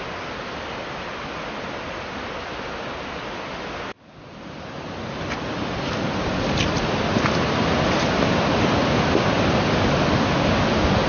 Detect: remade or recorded recorded